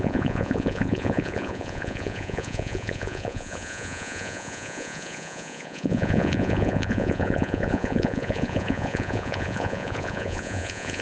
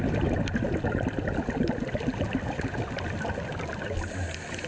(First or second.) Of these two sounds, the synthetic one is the first